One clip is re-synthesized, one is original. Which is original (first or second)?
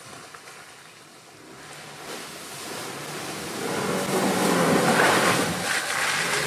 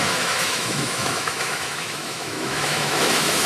first